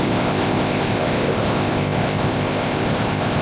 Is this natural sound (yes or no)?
no